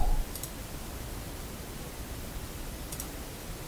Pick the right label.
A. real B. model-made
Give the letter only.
A